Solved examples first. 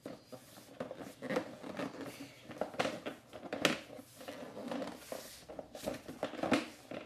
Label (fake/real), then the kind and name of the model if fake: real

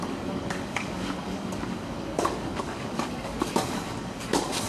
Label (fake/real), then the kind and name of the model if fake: fake, codec, DAC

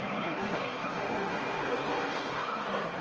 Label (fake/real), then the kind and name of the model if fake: fake, codec, SNAC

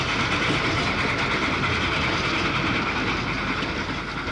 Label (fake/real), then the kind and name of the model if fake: real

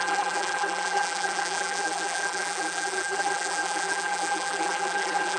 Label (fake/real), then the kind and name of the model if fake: fake, vocoder, BigVGAN v2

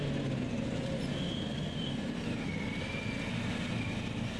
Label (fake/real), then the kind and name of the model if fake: real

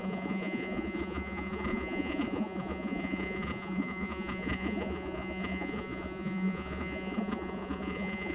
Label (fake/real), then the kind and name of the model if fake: fake, vocoder, Vocos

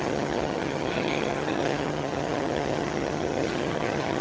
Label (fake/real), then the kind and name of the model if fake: fake, vocoder, HiFi-GAN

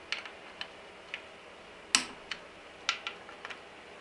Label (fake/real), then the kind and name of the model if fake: real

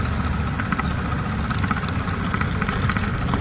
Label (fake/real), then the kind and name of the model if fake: real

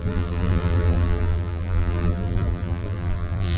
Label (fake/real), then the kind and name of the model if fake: fake, vocoder, BigVGAN v2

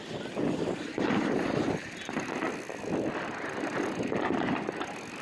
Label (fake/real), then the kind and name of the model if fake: real